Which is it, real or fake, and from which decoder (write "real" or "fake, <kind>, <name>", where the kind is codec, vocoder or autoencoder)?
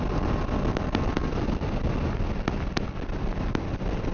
real